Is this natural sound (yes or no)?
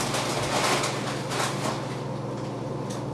yes